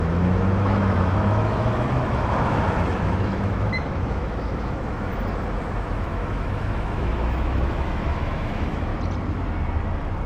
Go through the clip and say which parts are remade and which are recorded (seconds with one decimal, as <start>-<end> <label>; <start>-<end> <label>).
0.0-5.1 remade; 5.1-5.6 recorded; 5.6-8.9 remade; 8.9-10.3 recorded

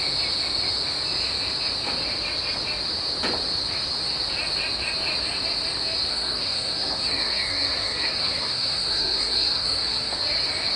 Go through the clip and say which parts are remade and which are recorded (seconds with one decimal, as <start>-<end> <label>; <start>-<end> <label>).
0.0-6.1 recorded; 6.1-10.1 remade; 10.1-10.8 recorded

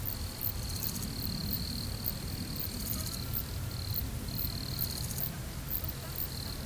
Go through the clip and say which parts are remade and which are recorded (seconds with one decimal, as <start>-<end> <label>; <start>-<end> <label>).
0.0-6.7 recorded

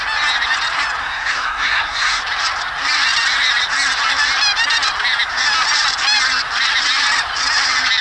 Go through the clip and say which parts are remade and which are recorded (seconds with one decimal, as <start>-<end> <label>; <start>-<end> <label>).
0.0-1.0 recorded; 1.0-2.2 remade; 2.2-8.0 recorded